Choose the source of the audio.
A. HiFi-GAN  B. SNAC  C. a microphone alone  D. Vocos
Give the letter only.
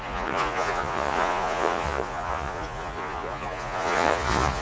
D